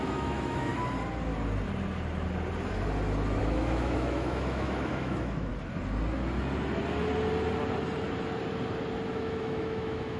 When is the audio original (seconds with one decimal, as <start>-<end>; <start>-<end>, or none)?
0.7-3.4; 5.5-9.1